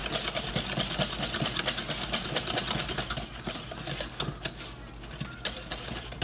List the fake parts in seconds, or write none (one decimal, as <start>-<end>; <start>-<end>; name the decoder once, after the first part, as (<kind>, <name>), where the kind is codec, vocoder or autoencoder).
none